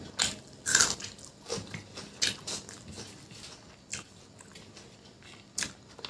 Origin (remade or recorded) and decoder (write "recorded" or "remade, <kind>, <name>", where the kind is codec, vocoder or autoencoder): recorded